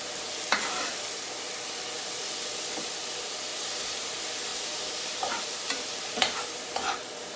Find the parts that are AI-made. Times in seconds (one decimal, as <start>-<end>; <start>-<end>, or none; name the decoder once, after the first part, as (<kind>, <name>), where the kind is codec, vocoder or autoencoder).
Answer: 3.5-4.1 (vocoder, BigVGAN v2); 4.5-6.7